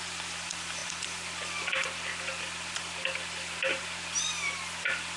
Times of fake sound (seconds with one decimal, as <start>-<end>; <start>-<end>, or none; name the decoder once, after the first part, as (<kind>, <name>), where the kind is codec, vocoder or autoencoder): none